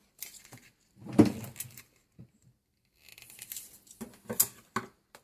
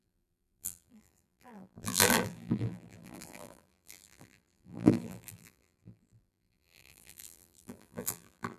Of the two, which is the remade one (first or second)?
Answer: second